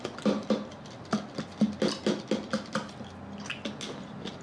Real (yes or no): yes